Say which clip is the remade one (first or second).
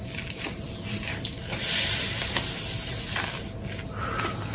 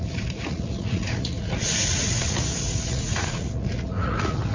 second